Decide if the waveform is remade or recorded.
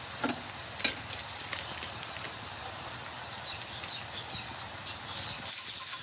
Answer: recorded